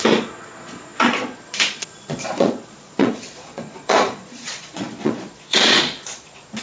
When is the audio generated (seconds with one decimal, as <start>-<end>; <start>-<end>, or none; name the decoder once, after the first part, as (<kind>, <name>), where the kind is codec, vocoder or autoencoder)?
0.0-6.6 (vocoder, Vocos)